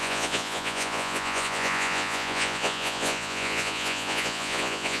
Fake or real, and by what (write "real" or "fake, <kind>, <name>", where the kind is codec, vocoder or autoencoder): fake, vocoder, Vocos